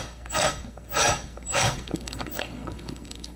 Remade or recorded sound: remade